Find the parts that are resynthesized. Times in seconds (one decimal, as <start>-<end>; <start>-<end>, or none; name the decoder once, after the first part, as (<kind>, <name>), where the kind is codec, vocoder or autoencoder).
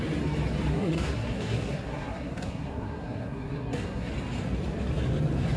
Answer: 0.7-4.1 (codec, SNAC)